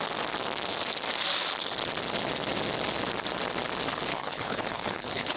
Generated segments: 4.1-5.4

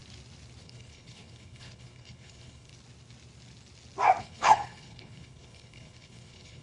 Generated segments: 0.6-2.7; 4.2-6.6